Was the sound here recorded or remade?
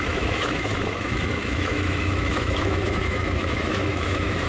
remade